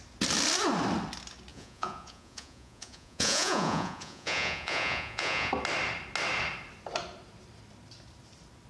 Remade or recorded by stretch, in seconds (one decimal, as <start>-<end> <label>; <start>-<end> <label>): 0.0-1.5 recorded; 1.5-5.5 remade; 5.5-8.7 recorded